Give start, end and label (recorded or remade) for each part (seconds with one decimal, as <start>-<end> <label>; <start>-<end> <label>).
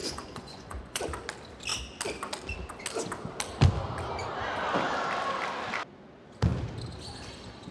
0.0-1.0 remade; 1.0-7.7 recorded